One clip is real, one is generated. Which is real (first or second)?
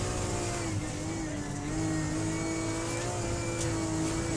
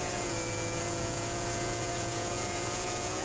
first